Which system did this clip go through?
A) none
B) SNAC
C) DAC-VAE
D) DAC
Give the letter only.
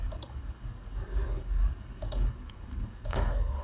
D